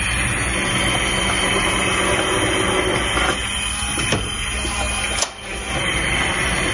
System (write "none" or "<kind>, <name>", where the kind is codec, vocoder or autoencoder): none